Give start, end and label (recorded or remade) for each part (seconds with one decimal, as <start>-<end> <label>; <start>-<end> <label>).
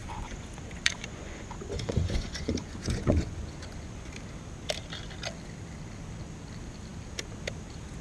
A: 0.0-4.1 remade; 4.1-8.0 recorded